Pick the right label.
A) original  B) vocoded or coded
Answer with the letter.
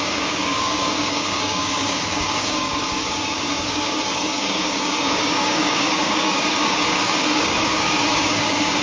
B